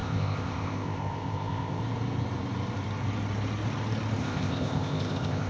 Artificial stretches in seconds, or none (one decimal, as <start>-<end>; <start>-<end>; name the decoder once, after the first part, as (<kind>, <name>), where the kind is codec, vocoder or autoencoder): 0.0-1.8 (codec, ZipCodec); 4.2-5.5